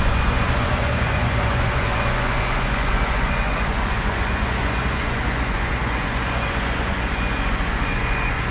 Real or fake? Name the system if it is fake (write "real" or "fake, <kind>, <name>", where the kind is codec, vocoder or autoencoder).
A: fake, vocoder, Vocos